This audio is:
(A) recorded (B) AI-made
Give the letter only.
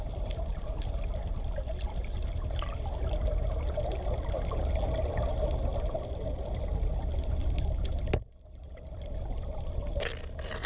A